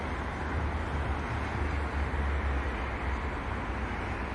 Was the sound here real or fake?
real